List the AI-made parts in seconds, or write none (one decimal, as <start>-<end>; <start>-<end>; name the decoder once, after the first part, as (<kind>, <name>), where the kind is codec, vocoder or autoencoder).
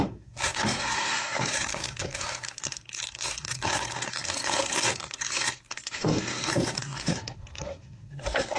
0.0-8.6 (codec, SNAC)